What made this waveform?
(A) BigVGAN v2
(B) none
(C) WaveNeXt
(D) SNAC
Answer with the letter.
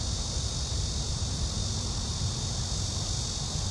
A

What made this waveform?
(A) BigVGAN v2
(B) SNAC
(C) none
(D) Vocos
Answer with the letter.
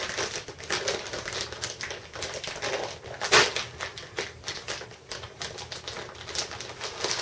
C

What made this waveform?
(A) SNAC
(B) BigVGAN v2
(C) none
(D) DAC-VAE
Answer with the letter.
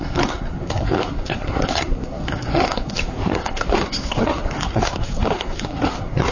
A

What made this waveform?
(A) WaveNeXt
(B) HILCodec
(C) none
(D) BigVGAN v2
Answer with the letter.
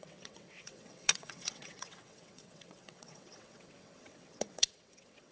A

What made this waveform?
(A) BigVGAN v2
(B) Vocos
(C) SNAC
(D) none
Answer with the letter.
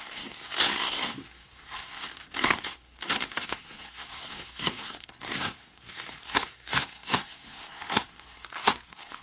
C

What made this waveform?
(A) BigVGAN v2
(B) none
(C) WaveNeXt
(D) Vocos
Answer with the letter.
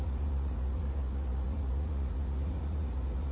D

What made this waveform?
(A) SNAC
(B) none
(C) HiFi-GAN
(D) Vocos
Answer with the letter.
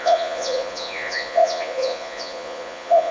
D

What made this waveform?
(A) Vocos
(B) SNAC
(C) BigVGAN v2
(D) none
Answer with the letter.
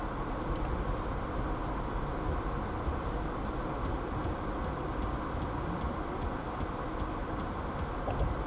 D